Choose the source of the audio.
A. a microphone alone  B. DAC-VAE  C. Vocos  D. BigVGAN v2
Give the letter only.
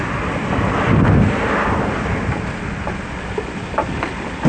A